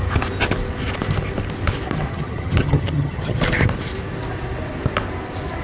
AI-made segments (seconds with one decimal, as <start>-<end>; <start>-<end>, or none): 2.1-3.4